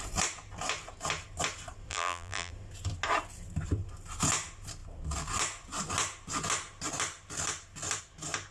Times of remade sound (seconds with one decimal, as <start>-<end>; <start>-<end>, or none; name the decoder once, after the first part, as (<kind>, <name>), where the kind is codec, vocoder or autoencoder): 1.9-2.5 (vocoder, BigVGAN v2)